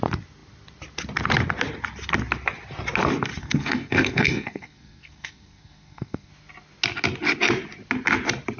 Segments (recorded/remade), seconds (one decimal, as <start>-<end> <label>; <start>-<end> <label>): 0.0-3.4 recorded; 3.4-6.3 remade; 6.3-8.6 recorded